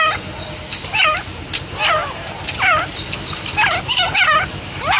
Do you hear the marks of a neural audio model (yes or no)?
no